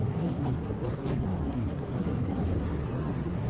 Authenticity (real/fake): fake